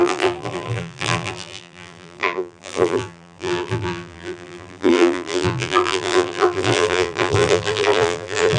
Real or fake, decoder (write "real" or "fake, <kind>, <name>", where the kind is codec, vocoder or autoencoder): fake, vocoder, BigVGAN v2